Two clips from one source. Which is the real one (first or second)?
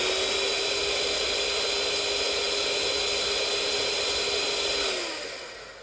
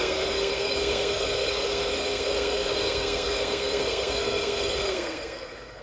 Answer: first